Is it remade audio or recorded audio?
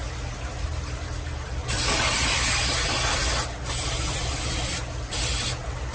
recorded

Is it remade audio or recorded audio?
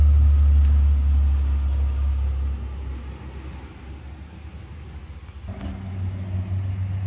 recorded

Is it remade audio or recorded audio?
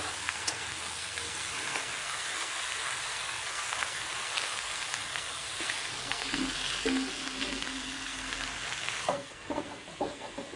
remade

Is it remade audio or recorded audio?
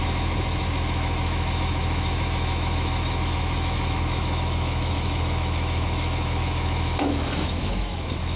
remade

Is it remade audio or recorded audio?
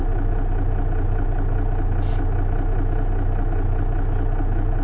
recorded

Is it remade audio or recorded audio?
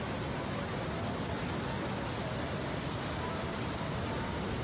recorded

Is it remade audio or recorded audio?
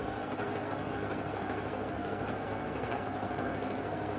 remade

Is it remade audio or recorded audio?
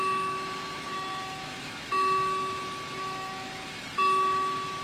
remade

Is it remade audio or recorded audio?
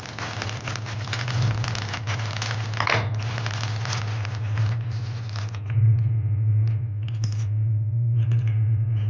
recorded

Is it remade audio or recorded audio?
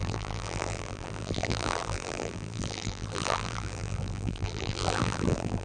remade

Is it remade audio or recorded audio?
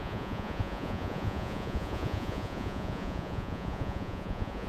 remade